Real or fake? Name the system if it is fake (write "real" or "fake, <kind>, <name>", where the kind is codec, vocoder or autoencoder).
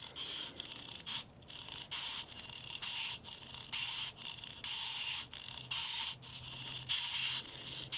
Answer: real